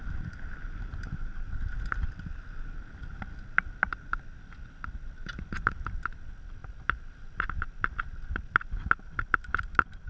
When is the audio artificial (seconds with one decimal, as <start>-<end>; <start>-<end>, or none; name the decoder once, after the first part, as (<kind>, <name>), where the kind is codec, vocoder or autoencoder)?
none